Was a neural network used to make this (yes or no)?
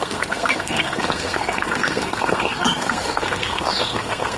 yes